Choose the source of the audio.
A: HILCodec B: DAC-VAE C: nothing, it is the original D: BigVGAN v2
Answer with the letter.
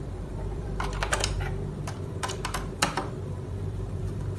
D